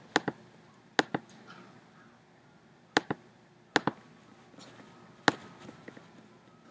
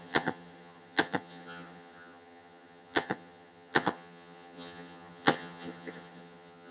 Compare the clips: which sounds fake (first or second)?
second